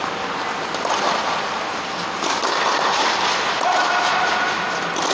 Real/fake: real